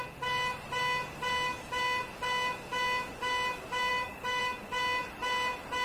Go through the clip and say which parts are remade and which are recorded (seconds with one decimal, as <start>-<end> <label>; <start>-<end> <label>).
0.0-3.9 recorded; 3.9-4.4 remade; 4.4-5.8 recorded